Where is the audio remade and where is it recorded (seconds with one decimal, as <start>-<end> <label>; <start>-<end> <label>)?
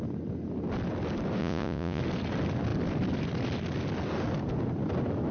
0.0-1.4 recorded; 1.4-2.0 remade; 2.0-5.3 recorded